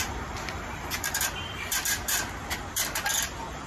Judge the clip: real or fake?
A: fake